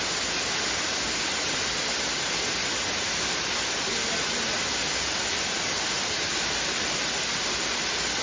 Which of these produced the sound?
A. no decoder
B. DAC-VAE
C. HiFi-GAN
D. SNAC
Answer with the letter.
A